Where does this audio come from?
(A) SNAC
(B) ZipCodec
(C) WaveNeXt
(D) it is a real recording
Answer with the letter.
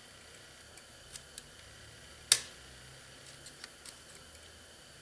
D